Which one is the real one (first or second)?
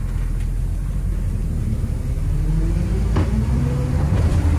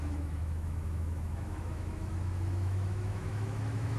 first